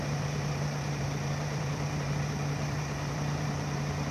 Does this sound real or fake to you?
fake